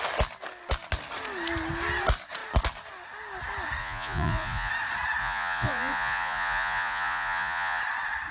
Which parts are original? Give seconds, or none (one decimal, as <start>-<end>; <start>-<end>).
0.0-3.8; 4.7-5.2; 7.8-8.3